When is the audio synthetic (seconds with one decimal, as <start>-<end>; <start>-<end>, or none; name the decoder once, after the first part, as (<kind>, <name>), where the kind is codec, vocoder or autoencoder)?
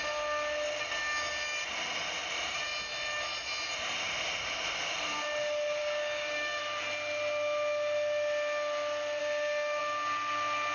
5.8-6.6 (codec, DAC); 9.2-9.8